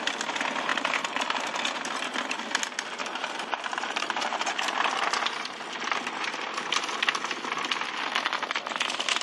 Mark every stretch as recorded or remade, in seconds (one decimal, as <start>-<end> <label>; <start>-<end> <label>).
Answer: 0.0-0.7 recorded; 0.7-1.6 remade; 1.6-3.0 recorded; 3.0-4.7 remade; 4.7-9.2 recorded